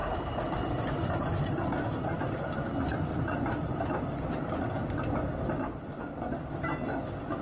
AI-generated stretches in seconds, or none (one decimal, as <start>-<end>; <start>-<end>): 2.9-4.6